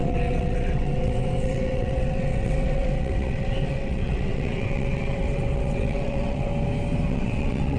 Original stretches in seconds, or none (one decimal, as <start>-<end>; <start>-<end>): 6.5-7.1